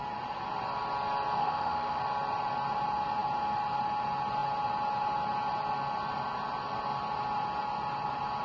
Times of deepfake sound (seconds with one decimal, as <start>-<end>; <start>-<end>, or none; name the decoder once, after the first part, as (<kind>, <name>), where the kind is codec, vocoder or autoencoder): 1.4-2.0 (autoencoder, DAC-VAE)